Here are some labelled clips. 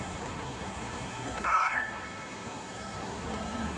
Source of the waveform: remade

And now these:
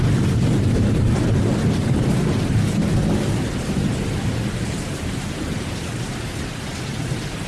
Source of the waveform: recorded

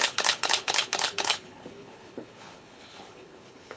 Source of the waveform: remade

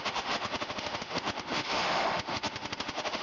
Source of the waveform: remade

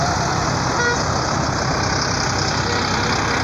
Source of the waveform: recorded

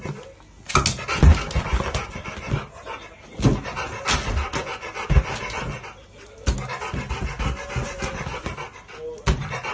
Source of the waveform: recorded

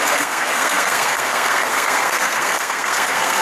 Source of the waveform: remade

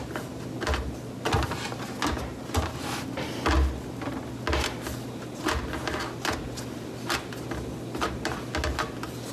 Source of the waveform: recorded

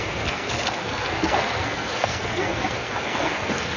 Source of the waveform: remade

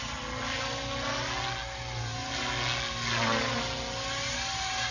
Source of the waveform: recorded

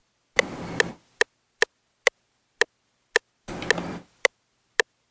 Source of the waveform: recorded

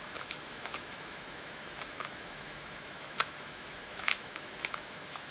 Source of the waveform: remade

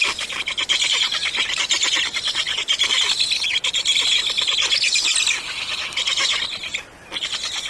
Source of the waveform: recorded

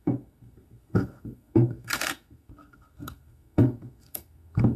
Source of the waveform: remade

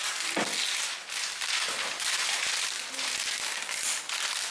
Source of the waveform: recorded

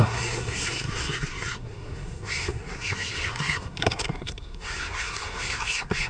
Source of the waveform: remade